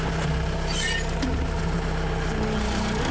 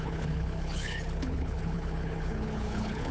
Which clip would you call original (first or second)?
first